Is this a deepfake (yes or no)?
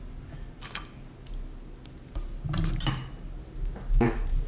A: no